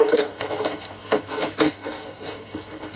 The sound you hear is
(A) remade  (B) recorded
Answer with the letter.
A